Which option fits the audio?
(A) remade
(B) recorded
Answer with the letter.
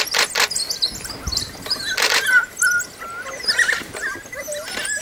B